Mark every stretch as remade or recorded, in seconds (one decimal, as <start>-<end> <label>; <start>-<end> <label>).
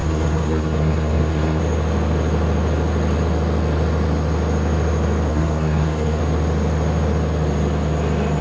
0.0-1.6 remade; 1.6-5.3 recorded; 5.3-6.2 remade; 6.2-8.4 recorded